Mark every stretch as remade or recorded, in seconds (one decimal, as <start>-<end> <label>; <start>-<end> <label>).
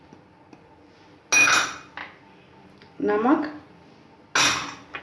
0.0-5.0 recorded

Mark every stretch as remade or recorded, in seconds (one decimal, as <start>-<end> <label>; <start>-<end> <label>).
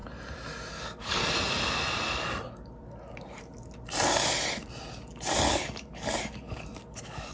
0.0-0.7 recorded; 0.7-1.2 remade; 1.2-5.5 recorded; 5.5-7.3 remade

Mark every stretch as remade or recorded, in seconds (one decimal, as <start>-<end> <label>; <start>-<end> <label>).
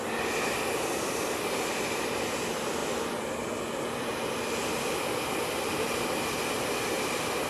0.0-7.5 recorded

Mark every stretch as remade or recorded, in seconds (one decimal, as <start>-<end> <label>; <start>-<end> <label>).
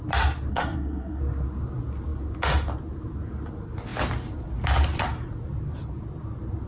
0.0-0.5 recorded; 0.5-1.2 remade; 1.2-6.7 recorded